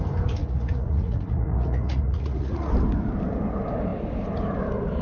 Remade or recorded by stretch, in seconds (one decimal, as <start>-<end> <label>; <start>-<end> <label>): 0.0-0.4 recorded; 0.4-2.7 remade; 2.7-5.0 recorded